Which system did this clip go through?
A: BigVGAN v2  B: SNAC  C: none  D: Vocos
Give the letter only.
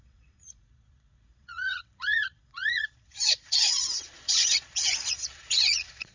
D